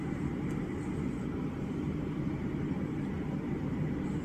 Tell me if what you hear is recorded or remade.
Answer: recorded